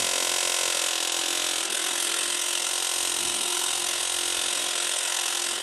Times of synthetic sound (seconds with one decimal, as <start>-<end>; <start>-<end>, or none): 1.6-2.7; 3.2-4.0; 4.5-5.6